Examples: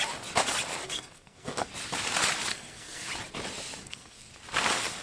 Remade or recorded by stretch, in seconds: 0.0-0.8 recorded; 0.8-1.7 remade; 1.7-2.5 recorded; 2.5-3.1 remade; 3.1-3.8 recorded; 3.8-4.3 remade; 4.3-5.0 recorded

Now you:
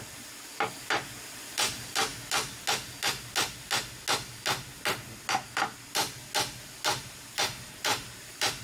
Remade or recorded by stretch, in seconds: 0.0-7.9 recorded; 7.9-8.6 remade

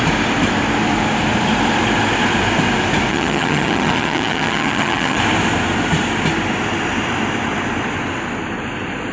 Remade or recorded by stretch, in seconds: 0.0-3.1 recorded; 3.1-5.2 remade; 5.2-9.1 recorded

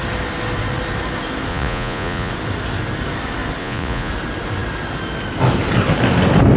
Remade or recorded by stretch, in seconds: 0.0-1.5 recorded; 1.5-2.3 remade; 2.3-3.6 recorded; 3.6-4.1 remade; 4.1-6.6 recorded

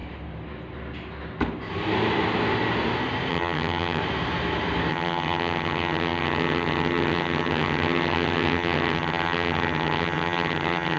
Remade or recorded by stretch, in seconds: 0.0-3.3 recorded; 3.3-4.0 remade; 4.0-4.9 recorded; 4.9-11.0 remade